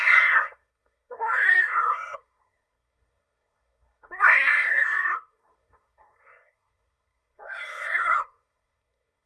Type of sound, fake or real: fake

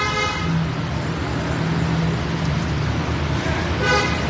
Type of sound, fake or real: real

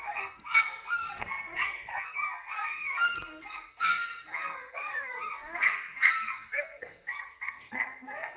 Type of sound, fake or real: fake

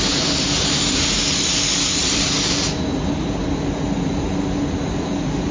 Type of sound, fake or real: real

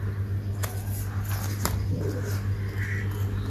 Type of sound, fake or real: real